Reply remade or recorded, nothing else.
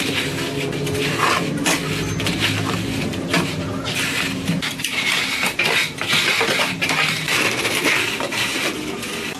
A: recorded